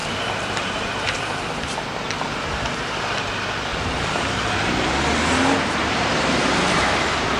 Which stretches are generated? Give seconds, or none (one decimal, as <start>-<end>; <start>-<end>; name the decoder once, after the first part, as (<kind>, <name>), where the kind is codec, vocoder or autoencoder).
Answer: 0.0-1.8 (vocoder, BigVGAN v2); 3.7-4.6; 5.8-7.4